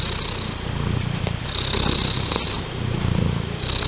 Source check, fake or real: real